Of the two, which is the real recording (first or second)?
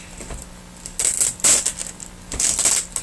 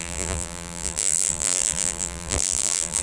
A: first